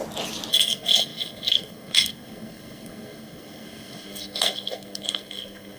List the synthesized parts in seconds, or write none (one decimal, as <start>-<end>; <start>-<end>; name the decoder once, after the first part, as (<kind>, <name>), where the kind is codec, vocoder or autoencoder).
0.5-5.8 (codec, SNAC)